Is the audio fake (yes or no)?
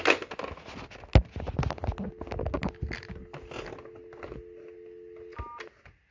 no